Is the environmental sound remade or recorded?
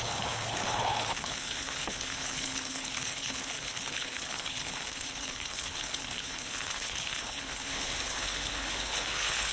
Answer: remade